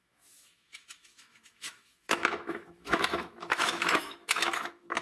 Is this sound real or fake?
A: fake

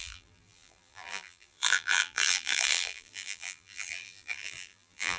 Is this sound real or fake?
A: fake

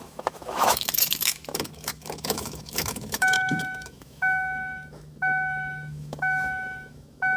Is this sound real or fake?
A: fake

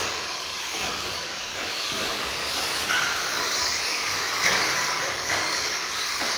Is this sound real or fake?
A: fake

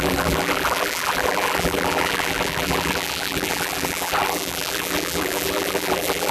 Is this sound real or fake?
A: fake